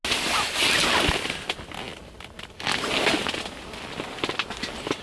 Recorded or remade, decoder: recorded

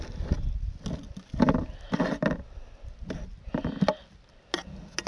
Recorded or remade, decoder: recorded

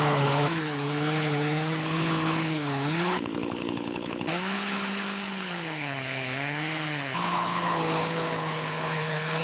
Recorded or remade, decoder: remade, codec, HILCodec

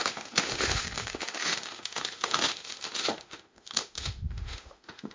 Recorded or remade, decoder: remade, autoencoder, DAC-VAE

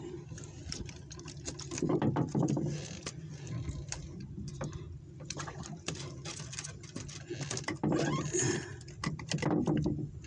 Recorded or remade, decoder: recorded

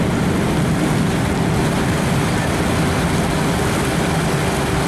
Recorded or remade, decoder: recorded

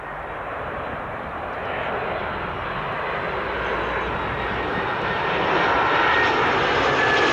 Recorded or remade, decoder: recorded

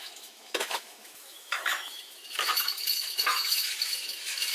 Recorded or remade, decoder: remade, autoencoder, DAC-VAE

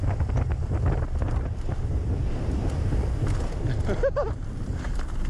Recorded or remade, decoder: recorded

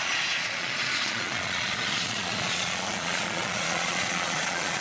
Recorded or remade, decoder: remade, vocoder, Vocos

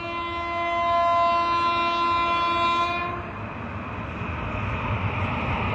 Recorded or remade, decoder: recorded